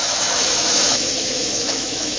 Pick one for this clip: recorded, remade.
remade